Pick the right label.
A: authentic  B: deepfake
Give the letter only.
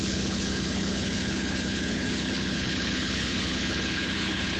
B